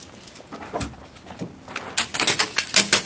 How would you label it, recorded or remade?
recorded